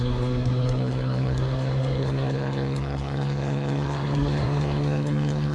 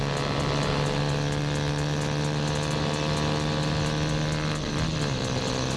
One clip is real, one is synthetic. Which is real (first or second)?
second